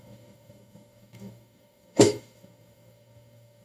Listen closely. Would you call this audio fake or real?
fake